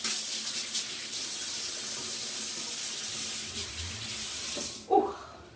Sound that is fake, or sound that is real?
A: real